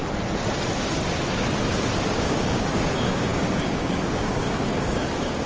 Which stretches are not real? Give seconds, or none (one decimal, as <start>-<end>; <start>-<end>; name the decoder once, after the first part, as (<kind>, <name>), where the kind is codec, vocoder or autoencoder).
2.1-5.5 (codec, DAC)